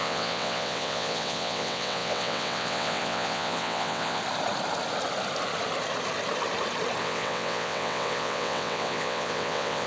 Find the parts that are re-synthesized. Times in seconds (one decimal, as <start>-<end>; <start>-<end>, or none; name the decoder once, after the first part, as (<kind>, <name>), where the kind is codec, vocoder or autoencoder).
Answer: 0.0-4.2 (vocoder, WaveNeXt); 7.0-9.9